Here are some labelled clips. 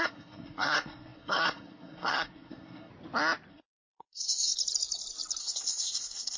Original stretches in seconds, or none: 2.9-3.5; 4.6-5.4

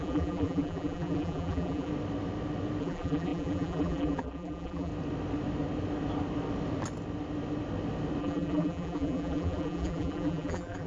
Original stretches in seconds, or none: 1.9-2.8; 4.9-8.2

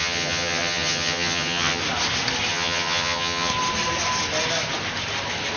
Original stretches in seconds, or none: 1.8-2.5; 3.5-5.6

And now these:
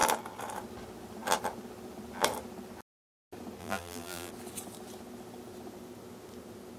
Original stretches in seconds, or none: 0.0-3.6; 4.3-6.8

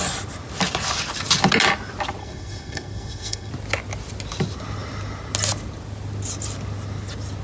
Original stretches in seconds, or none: 0.0-2.2; 3.5-7.4

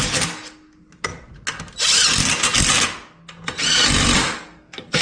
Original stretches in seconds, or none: 0.0-4.2

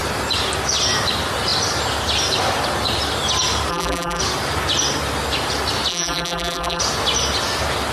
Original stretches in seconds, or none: 0.0-3.7; 4.2-5.9; 6.8-7.9

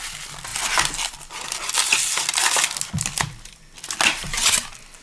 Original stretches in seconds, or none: 0.0-5.0